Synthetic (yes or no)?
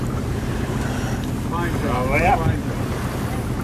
no